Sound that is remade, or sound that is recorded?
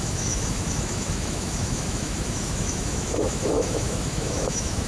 remade